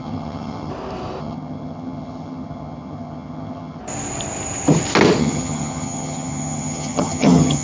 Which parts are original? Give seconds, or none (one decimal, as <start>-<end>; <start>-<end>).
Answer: 0.7-1.2; 3.8-5.2